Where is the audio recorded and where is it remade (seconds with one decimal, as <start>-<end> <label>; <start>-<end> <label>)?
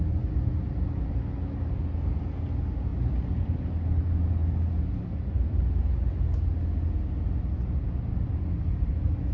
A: 0.0-9.3 recorded